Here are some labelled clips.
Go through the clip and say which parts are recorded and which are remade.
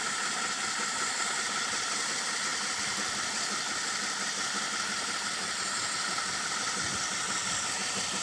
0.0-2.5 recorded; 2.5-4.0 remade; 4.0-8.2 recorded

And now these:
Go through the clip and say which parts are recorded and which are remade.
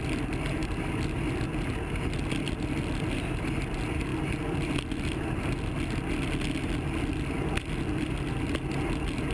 0.0-9.3 recorded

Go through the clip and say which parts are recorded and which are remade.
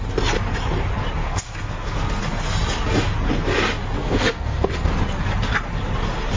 0.0-1.2 recorded; 1.2-2.2 remade; 2.2-4.0 recorded; 4.0-4.7 remade; 4.7-6.4 recorded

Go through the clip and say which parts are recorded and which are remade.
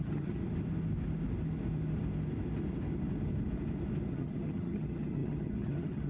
0.0-0.4 remade; 0.4-4.1 recorded; 4.1-6.1 remade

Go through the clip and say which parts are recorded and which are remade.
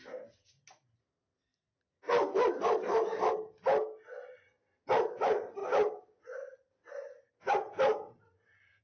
0.0-8.8 recorded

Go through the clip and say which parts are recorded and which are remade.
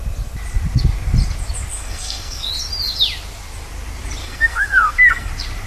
0.0-1.7 recorded; 1.7-2.5 remade; 2.5-4.2 recorded; 4.2-5.3 remade; 5.3-5.7 recorded